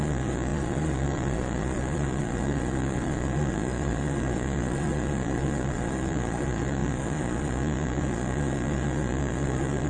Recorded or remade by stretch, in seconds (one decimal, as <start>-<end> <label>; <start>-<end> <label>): 0.0-9.9 remade